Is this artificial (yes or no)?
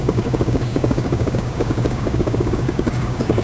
yes